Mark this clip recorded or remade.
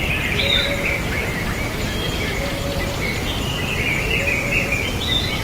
recorded